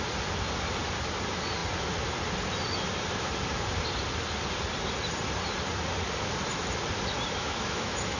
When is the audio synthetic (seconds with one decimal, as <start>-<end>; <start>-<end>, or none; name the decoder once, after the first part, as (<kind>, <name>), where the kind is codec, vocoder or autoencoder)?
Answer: 7.4-8.2 (autoencoder, DAC-VAE)